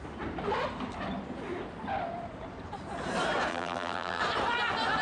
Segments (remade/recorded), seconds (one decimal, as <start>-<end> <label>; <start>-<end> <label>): 0.0-3.5 recorded; 3.5-4.2 remade; 4.2-5.0 recorded